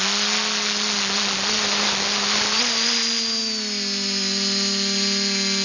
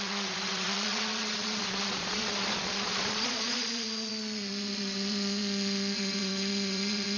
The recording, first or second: first